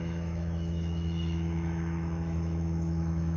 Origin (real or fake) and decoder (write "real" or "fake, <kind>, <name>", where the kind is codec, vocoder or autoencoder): fake, autoencoder, DAC-VAE